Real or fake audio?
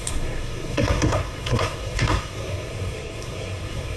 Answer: fake